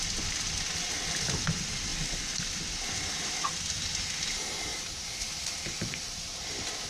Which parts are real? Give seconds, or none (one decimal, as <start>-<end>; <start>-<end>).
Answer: 0.0-4.7; 6.4-6.9